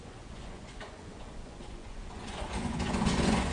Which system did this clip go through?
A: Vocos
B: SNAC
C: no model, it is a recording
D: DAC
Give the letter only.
A